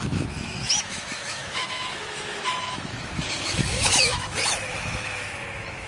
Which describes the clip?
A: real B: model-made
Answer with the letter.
B